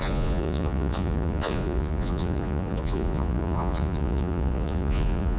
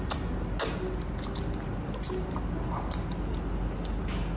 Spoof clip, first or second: first